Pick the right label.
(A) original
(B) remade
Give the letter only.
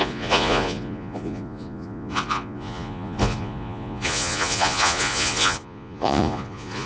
B